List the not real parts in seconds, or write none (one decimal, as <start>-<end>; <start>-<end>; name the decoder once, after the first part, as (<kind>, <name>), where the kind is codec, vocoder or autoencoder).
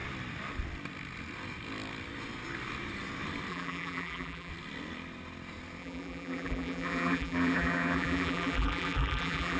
3.5-4.5 (vocoder, BigVGAN v2); 5.8-9.6